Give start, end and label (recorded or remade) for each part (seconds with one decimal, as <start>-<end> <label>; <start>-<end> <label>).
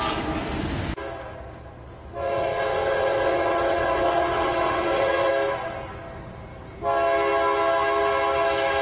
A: 0.0-2.2 recorded; 2.2-5.3 remade; 5.3-8.8 recorded